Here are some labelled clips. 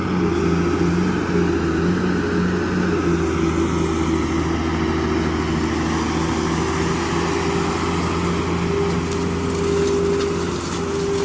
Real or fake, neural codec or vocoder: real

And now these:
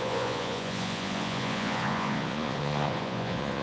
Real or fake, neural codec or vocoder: fake, vocoder, Vocos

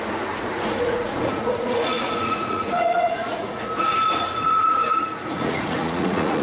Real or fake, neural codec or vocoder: fake, vocoder, Vocos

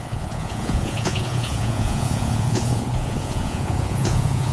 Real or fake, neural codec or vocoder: fake, vocoder, Vocos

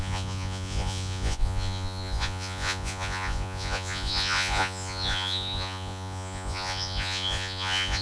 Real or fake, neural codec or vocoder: fake, vocoder, Vocos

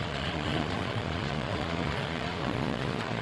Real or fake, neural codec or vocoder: fake, vocoder, Vocos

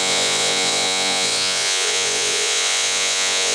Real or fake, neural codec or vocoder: fake, vocoder, Vocos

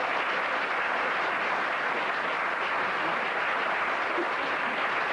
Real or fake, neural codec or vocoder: real